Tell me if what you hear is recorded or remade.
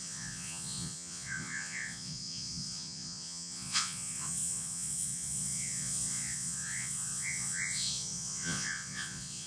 remade